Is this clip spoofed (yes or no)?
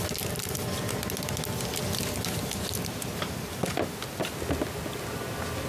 no